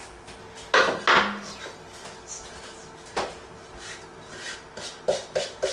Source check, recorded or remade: recorded